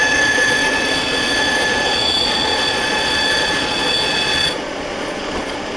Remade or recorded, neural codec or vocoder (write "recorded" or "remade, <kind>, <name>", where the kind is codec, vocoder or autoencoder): remade, vocoder, Vocos